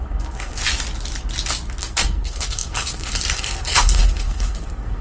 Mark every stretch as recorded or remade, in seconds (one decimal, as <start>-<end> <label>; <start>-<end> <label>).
0.0-0.6 remade; 0.6-1.8 recorded; 1.8-5.0 remade